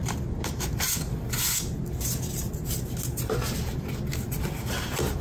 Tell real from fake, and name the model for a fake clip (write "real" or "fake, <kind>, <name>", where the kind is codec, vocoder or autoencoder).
real